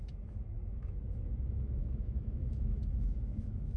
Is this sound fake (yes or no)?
yes